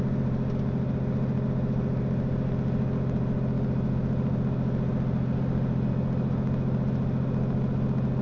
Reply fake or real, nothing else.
real